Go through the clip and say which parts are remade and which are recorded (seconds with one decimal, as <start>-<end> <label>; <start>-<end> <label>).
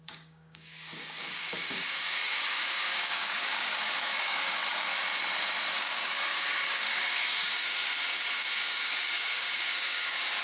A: 0.0-4.9 remade; 4.9-5.7 recorded; 5.7-10.4 remade